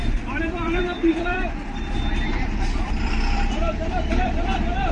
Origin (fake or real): fake